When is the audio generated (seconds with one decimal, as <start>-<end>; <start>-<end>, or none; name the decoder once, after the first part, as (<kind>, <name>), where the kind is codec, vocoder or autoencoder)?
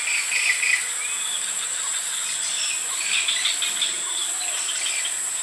none